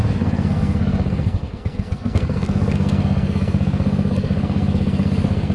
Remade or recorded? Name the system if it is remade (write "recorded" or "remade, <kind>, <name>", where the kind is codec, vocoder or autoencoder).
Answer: remade, codec, SNAC